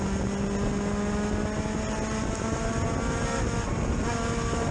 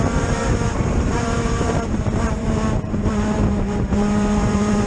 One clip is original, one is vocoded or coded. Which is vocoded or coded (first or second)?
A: second